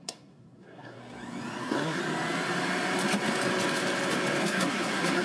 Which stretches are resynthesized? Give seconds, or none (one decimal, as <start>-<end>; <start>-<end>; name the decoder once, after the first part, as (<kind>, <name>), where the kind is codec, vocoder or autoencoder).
0.0-1.0 (codec, SNAC); 1.6-2.0; 4.4-5.2